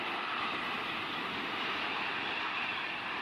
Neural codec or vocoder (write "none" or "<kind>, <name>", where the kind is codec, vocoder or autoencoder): vocoder, BigVGAN v2